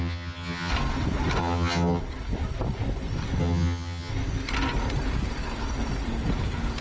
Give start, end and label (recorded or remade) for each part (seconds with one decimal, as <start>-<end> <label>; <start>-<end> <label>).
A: 0.0-0.7 remade; 0.7-1.4 recorded; 1.4-2.0 remade; 2.0-3.4 recorded; 3.4-4.1 remade; 4.1-6.8 recorded